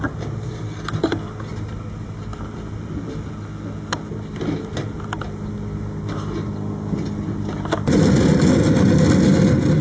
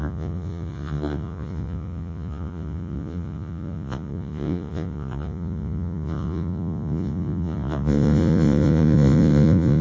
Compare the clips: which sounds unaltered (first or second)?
first